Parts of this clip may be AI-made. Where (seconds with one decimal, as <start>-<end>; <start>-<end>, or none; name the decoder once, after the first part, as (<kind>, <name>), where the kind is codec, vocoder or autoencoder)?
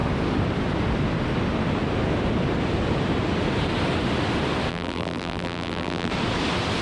4.7-6.1 (vocoder, BigVGAN v2)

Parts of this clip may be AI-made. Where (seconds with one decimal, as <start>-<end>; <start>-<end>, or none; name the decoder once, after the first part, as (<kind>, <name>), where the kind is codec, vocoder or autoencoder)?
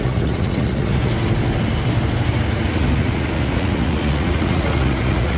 0.0-1.1 (vocoder, Vocos); 2.7-5.4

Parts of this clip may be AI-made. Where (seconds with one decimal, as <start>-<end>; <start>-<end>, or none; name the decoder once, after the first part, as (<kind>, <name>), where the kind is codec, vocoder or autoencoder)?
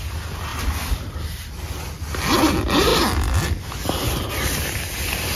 none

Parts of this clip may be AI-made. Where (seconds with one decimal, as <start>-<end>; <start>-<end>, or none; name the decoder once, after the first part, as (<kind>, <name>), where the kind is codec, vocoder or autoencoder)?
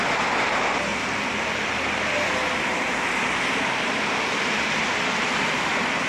none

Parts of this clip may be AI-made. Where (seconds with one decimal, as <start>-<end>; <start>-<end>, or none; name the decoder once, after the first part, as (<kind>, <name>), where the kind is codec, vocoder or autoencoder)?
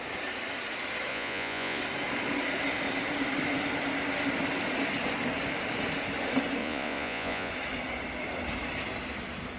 1.1-1.8 (vocoder, Vocos); 6.6-7.5